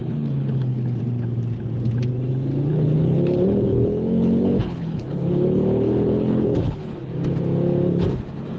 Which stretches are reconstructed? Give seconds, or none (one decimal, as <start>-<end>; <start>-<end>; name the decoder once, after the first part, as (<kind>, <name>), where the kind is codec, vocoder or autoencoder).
0.0-1.0 (codec, HILCodec); 2.7-7.1